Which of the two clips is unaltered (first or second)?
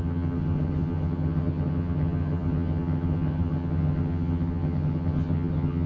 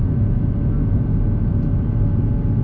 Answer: second